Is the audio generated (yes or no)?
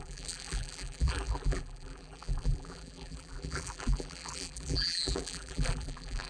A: yes